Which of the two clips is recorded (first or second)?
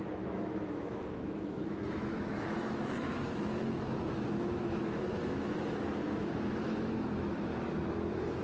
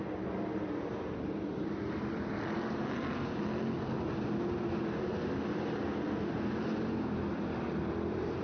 second